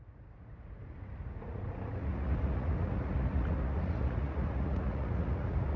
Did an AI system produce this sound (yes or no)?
yes